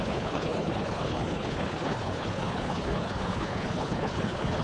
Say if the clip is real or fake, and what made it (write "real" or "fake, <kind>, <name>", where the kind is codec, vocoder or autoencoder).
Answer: fake, codec, HILCodec